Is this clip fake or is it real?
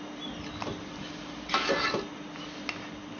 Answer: real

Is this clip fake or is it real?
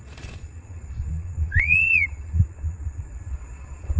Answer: fake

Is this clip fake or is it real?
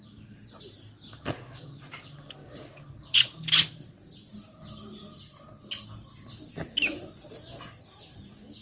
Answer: real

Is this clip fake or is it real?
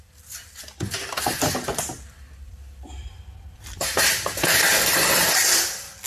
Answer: fake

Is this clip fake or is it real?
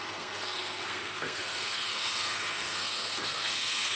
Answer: fake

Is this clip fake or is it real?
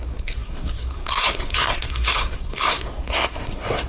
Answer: fake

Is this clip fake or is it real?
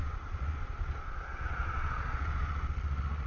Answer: fake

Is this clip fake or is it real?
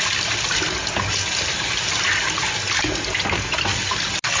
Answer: real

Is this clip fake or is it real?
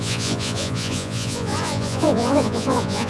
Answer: fake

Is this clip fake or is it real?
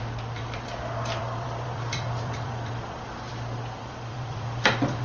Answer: fake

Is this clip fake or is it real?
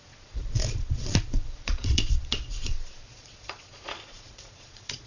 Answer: fake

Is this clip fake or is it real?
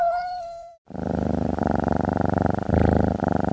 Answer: fake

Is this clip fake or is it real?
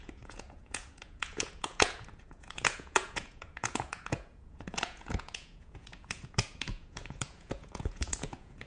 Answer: fake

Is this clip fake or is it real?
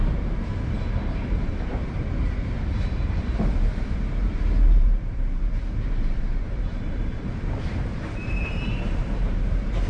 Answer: fake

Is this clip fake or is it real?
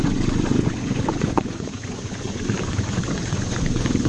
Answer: fake